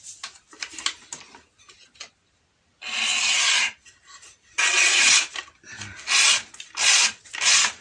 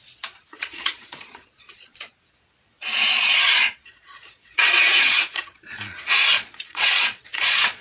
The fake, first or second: second